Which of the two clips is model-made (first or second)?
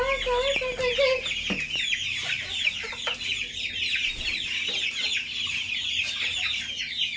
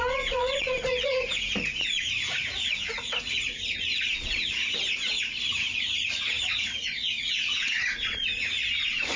second